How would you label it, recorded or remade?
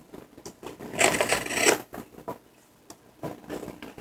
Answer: recorded